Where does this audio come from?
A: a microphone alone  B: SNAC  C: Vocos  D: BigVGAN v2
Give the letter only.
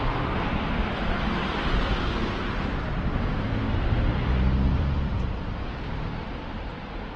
D